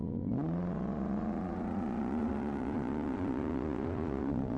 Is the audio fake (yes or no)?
yes